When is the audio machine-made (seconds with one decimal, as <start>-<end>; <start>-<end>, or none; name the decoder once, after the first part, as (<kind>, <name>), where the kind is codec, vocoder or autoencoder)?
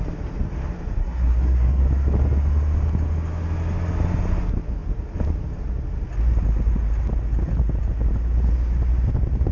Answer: 1.0-1.8 (codec, SNAC)